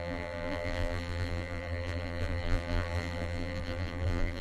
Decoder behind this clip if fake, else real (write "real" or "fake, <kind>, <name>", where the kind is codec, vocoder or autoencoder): fake, vocoder, BigVGAN v2